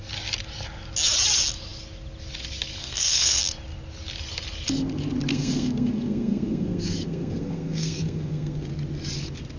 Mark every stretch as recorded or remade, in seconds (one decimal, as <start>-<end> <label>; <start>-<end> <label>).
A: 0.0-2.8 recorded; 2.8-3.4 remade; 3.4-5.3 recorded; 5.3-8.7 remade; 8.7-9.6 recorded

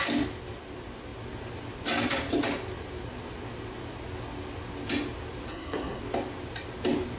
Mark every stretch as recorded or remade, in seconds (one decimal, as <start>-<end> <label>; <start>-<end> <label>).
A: 0.0-5.5 recorded; 5.5-6.0 remade; 6.0-7.2 recorded

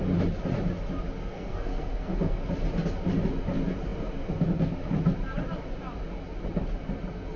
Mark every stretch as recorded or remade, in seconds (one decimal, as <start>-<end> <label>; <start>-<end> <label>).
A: 0.0-1.2 recorded; 1.2-2.4 remade; 2.4-7.4 recorded